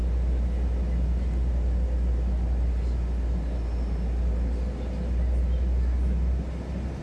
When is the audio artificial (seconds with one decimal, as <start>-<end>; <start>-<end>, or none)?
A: none